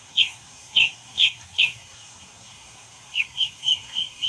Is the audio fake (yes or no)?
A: yes